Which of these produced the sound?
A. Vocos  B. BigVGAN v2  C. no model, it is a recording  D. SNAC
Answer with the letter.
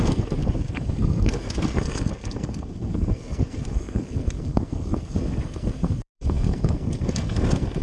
D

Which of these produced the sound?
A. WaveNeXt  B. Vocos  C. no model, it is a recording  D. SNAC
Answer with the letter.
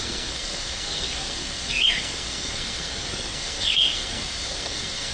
D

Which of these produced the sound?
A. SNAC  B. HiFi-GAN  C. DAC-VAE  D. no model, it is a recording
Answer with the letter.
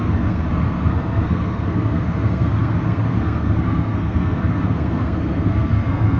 A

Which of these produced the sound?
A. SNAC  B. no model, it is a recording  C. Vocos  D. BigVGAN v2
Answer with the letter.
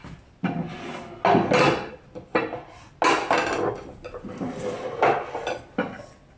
B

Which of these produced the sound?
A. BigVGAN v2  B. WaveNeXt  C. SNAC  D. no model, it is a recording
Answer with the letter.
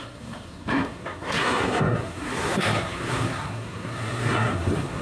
C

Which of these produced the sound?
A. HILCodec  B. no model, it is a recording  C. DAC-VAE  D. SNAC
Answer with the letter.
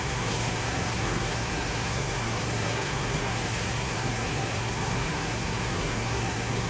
D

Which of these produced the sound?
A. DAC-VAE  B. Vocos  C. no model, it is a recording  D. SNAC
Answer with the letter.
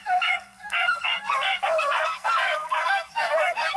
D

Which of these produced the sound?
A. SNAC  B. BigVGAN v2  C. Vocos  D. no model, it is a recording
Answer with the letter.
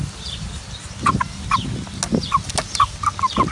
D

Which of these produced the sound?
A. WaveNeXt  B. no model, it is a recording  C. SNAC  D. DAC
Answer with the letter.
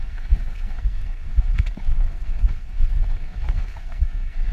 C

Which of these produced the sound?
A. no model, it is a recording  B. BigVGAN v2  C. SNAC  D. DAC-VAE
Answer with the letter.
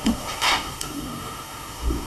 C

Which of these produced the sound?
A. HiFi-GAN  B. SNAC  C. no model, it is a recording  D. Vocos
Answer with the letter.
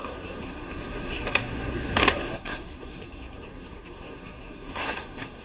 B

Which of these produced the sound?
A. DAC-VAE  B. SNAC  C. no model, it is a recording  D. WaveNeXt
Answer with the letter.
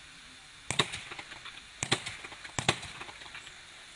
C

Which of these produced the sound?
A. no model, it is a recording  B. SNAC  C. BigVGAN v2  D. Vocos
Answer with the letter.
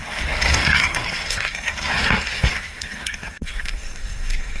B